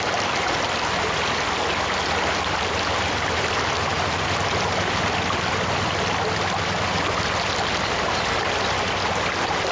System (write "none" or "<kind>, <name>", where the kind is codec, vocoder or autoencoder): none